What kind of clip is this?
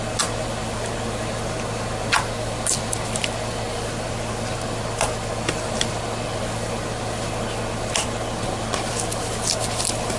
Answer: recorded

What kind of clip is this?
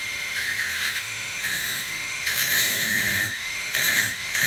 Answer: remade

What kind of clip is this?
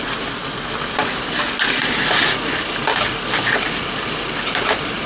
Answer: recorded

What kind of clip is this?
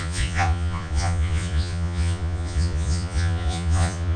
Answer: remade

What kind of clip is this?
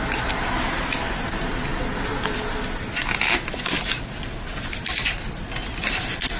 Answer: recorded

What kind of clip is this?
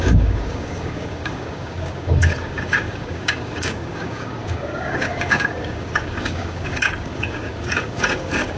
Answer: remade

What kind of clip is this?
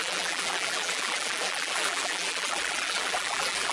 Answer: remade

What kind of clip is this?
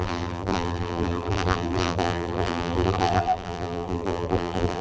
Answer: remade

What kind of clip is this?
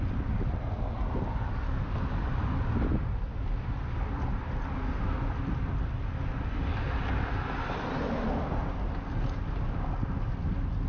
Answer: recorded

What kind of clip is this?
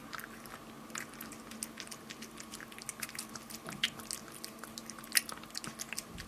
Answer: recorded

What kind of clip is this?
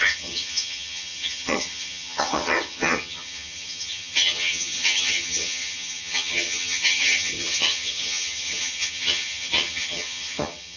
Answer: remade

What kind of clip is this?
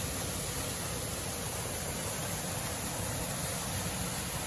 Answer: recorded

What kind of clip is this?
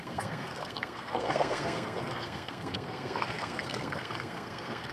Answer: remade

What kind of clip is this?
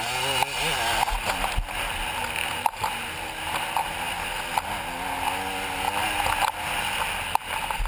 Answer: recorded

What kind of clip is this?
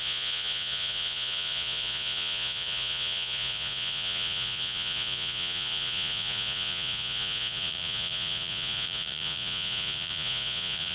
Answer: remade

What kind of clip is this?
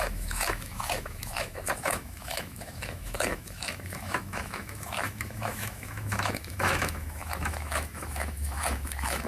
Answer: remade